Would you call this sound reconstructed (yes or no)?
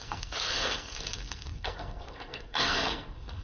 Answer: yes